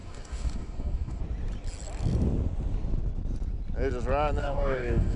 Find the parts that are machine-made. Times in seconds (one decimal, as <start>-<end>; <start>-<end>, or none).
0.0-1.2; 4.4-5.2